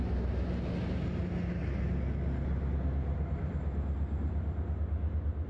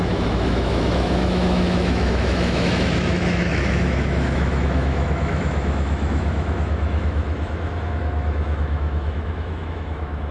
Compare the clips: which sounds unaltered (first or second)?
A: first